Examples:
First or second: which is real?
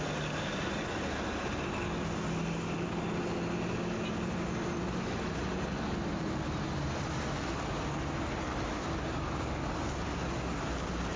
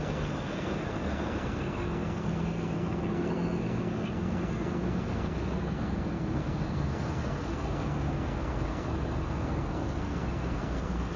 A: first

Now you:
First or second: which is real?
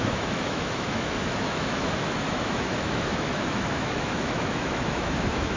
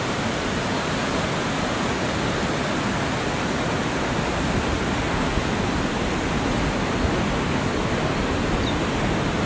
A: second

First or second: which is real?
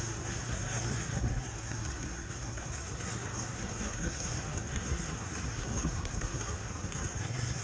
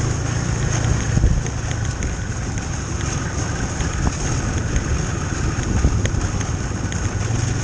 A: second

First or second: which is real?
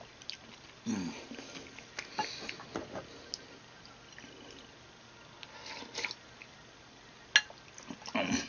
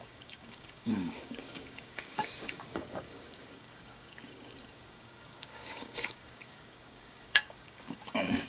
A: first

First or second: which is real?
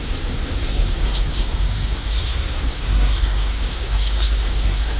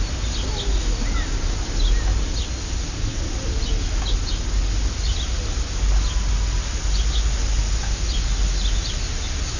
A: second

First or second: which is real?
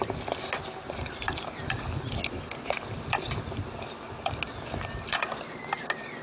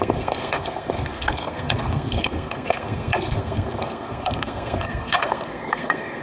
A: first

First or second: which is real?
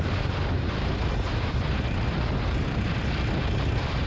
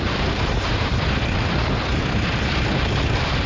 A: first